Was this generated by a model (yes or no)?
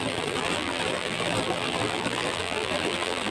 yes